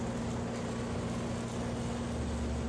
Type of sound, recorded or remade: recorded